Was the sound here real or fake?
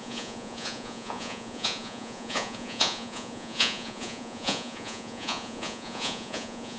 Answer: fake